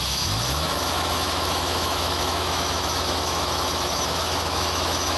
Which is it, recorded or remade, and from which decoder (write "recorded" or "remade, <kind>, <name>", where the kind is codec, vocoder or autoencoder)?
remade, autoencoder, DAC-VAE